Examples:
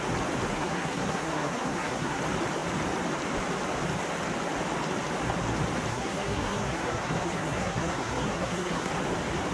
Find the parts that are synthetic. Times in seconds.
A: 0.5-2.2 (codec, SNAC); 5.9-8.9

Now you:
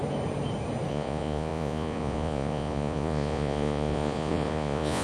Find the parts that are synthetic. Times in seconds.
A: 0.9-5.0 (vocoder, Vocos)

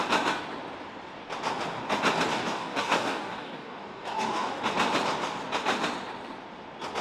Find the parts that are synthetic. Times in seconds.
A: 2.3-4.6 (codec, DAC)